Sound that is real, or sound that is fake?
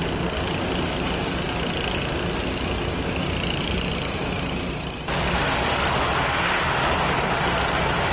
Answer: real